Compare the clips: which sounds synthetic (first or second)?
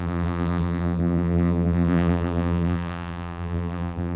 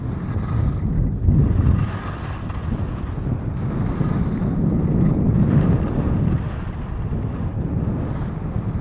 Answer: first